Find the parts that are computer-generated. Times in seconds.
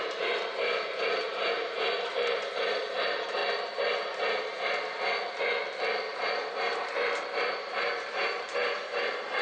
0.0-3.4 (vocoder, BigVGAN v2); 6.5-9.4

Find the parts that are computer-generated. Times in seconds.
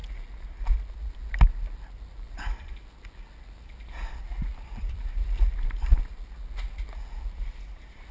4.5-5.4 (vocoder, BigVGAN v2)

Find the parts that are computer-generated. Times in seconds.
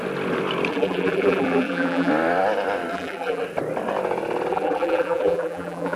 0.7-2.1 (vocoder, BigVGAN v2); 2.9-3.4; 4.5-6.0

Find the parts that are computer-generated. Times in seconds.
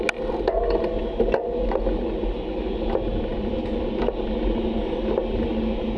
none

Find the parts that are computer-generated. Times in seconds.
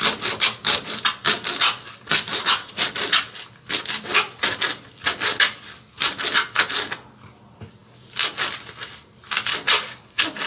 2.1-3.2 (vocoder, BigVGAN v2)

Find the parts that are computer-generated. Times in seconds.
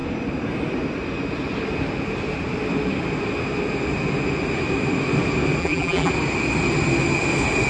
5.6-6.1 (vocoder, BigVGAN v2)